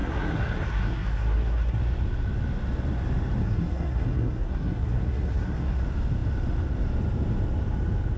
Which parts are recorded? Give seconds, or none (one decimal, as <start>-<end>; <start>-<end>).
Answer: 1.8-3.4; 5.8-8.2